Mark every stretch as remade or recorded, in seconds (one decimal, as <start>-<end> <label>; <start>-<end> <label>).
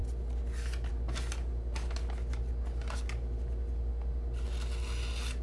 0.0-5.4 recorded